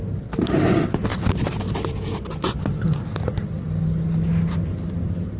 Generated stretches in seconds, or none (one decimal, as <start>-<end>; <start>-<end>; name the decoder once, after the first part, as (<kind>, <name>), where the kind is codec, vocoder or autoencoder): none